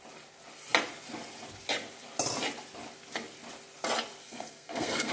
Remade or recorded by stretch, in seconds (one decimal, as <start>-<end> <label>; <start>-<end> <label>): 0.0-4.2 recorded; 4.2-5.1 remade